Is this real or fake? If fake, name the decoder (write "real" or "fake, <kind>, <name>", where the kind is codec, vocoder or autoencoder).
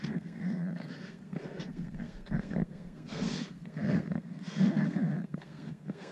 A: fake, codec, SNAC